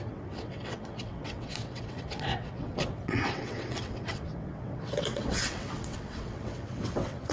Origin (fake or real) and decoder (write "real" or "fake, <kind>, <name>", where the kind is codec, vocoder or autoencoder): fake, vocoder, WaveNeXt